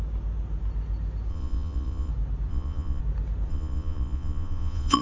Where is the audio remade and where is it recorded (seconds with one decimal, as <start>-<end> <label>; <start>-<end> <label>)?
0.0-1.3 recorded; 1.3-2.1 remade; 2.1-2.5 recorded; 2.5-3.0 remade; 3.0-3.5 recorded; 3.5-5.0 remade